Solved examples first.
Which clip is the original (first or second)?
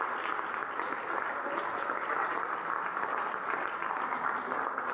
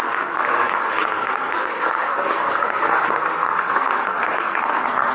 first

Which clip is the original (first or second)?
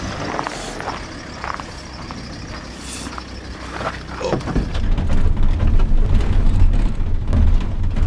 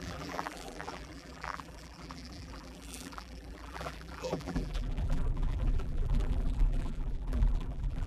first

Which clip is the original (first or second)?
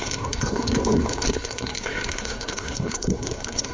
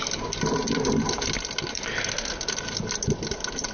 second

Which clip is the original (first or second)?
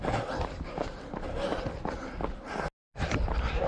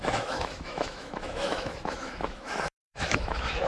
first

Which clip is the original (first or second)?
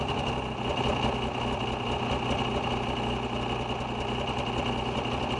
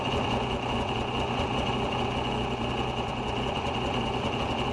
first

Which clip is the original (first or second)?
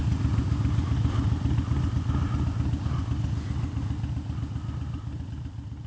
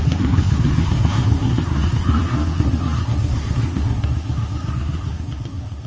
first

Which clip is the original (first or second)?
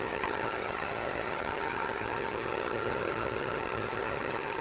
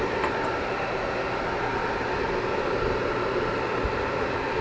second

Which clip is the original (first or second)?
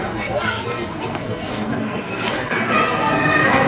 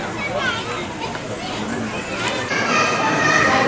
second